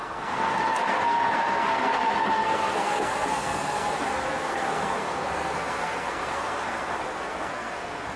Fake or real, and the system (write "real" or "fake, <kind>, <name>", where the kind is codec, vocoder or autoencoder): fake, codec, SNAC